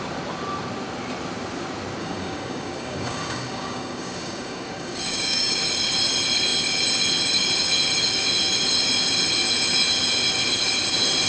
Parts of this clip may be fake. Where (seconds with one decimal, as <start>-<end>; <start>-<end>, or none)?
2.0-5.6